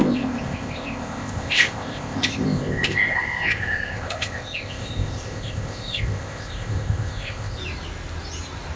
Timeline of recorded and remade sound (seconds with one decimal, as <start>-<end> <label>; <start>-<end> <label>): 0.0-7.6 remade; 7.6-8.8 recorded

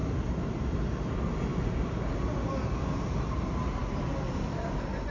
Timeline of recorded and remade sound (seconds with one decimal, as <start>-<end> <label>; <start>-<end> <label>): 0.0-5.1 recorded